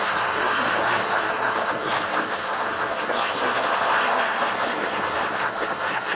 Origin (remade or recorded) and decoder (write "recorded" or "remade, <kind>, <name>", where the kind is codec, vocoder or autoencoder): remade, codec, SNAC